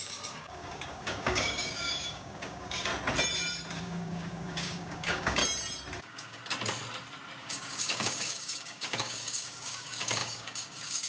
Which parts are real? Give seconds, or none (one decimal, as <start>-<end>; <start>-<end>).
2.9-3.8; 5.4-6.0; 6.4-7.4